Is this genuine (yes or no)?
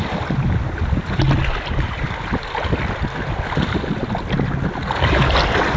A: yes